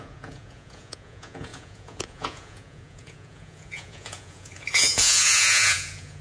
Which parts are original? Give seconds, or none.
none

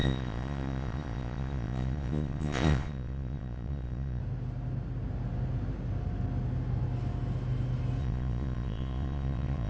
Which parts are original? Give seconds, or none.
4.2-8.0

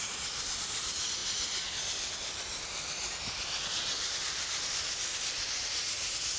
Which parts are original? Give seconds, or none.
0.0-6.4

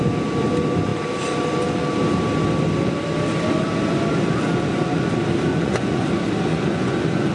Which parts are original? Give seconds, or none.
0.0-5.5; 6.1-6.5

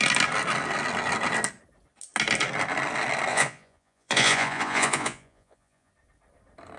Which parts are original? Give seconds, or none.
0.0-3.3; 5.9-6.8

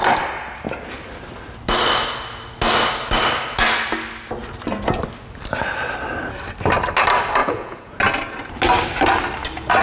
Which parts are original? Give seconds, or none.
0.0-7.4; 8.0-9.8

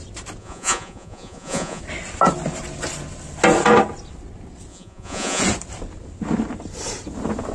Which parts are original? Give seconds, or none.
0.0-0.4; 1.8-4.7; 5.4-7.5

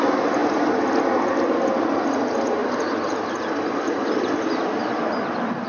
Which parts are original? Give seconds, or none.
0.0-5.7